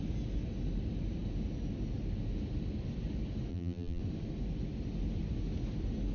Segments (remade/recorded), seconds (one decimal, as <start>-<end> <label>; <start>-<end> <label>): 0.0-3.5 recorded; 3.5-4.0 remade; 4.0-6.1 recorded